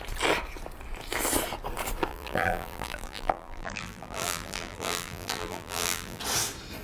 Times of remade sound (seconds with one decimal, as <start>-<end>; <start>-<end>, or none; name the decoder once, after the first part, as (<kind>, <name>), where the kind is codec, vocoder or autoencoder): 2.1-6.2 (vocoder, BigVGAN v2)